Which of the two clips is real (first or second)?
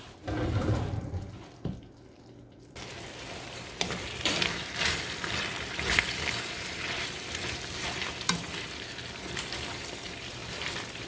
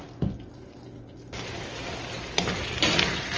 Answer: second